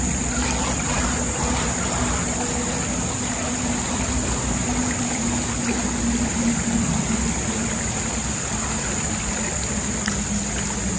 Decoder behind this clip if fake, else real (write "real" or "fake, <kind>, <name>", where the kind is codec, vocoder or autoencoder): real